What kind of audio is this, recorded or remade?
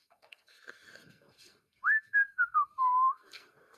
remade